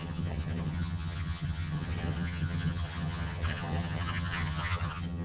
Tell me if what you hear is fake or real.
fake